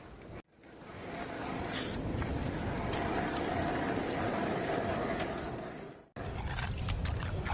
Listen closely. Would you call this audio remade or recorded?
recorded